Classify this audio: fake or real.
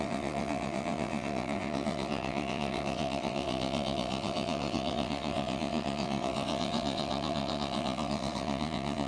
fake